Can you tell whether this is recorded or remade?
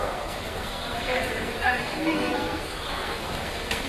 remade